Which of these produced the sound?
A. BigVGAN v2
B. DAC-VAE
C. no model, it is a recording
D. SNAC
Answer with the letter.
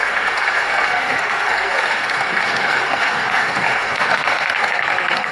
D